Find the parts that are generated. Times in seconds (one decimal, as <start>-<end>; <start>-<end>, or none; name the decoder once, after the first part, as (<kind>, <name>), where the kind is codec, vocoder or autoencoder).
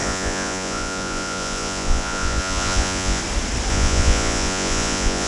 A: 0.0-3.2 (vocoder, Vocos); 3.7-5.3